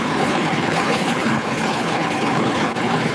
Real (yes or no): no